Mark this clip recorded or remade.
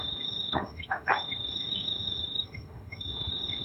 remade